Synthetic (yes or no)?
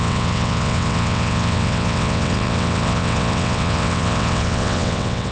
yes